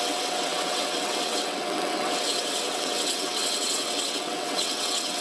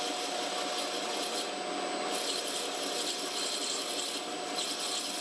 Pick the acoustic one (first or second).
second